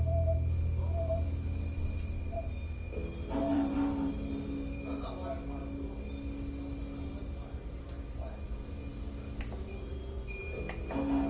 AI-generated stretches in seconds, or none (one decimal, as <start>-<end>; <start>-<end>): 3.4-4.1